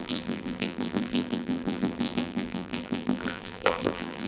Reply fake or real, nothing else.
fake